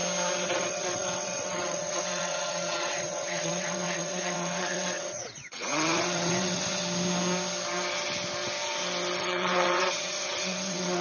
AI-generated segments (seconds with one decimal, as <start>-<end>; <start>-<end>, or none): 0.5-6.8; 9.2-11.0